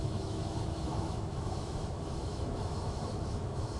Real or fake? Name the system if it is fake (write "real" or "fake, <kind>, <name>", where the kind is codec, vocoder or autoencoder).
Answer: fake, autoencoder, DAC-VAE